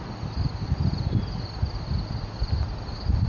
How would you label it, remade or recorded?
recorded